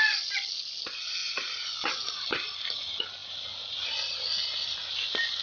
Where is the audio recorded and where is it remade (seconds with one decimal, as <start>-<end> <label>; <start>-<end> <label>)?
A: 0.0-5.4 recorded